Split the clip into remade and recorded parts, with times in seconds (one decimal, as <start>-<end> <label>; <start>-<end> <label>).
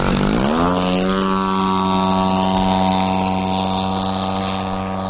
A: 0.0-5.1 recorded